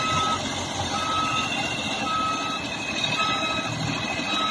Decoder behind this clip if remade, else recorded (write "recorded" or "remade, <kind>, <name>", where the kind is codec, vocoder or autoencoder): recorded